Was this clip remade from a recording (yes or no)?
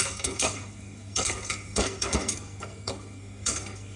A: yes